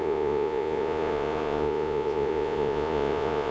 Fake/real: fake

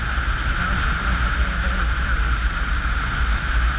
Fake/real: real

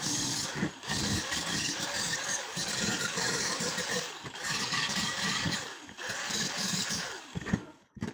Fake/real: fake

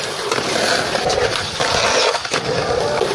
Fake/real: real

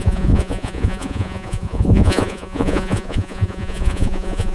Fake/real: fake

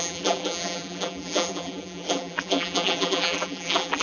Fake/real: fake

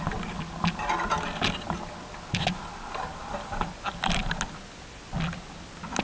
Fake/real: real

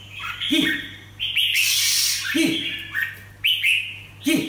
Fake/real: real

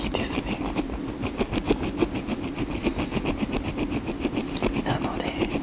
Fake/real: real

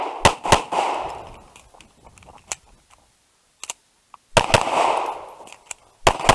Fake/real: real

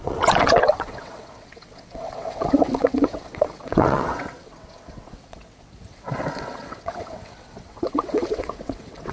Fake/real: fake